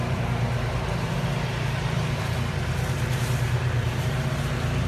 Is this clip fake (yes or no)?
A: yes